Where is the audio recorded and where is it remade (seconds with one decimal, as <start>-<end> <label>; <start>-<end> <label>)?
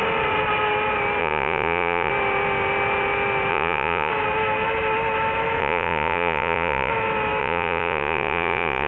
0.0-1.2 recorded; 1.2-2.1 remade; 2.1-3.5 recorded; 3.5-4.1 remade; 4.1-5.6 recorded; 5.6-6.9 remade; 6.9-7.4 recorded; 7.4-8.9 remade